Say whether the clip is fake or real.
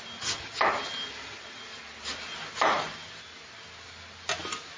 real